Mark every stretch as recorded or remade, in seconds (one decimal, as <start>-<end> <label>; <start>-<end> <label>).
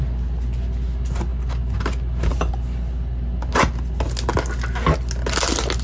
0.0-5.8 recorded